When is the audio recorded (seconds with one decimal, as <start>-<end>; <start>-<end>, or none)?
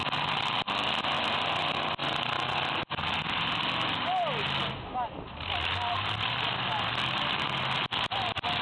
0.0-8.6